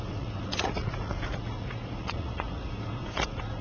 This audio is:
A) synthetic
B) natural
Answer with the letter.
A